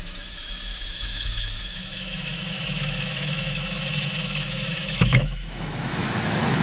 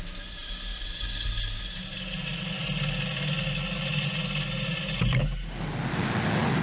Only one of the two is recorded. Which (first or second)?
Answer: second